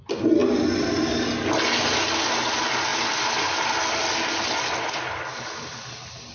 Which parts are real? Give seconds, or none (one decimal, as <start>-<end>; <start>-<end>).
0.0-6.3